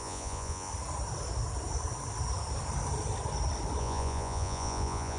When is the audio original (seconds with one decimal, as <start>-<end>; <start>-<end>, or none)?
0.7-3.8